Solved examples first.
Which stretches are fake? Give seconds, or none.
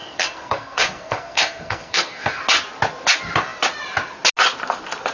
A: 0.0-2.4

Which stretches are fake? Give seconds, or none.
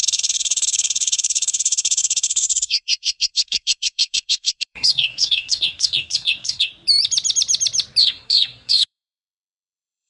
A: 0.0-6.7; 8.0-10.1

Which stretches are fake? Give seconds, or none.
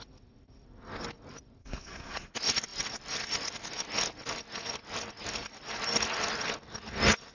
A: 1.6-2.3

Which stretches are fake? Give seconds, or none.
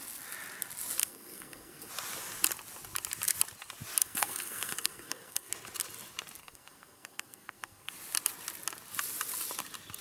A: 1.0-1.9; 4.0-5.5; 6.4-7.9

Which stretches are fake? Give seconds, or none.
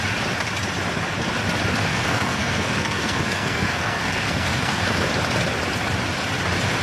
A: 1.9-5.1